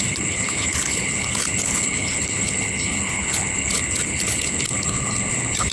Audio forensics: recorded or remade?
remade